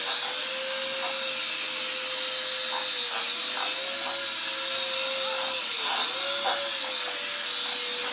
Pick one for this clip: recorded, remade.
recorded